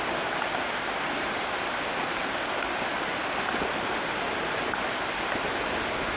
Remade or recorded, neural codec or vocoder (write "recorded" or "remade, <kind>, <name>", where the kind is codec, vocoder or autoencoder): recorded